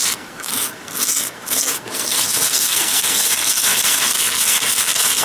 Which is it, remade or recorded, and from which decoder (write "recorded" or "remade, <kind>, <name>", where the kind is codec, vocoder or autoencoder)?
remade, codec, SNAC